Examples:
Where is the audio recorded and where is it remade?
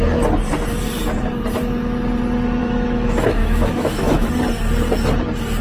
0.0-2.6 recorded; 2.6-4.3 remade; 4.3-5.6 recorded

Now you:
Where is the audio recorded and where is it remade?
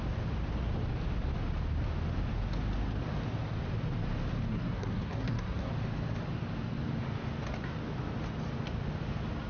0.0-4.5 recorded; 4.5-5.7 remade; 5.7-9.5 recorded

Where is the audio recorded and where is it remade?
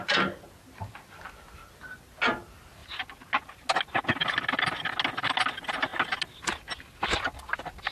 0.0-7.9 recorded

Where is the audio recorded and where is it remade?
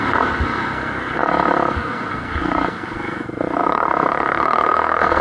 0.0-5.2 remade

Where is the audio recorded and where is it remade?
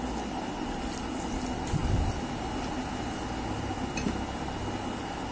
0.0-5.3 recorded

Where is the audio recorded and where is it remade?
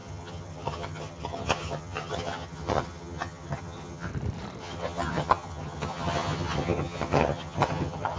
0.0-4.1 remade; 4.1-4.6 recorded; 4.6-8.2 remade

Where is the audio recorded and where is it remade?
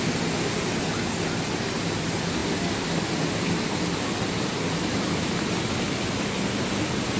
0.0-7.2 recorded